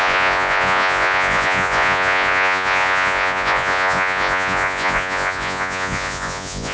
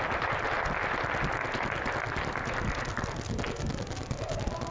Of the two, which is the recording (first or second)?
second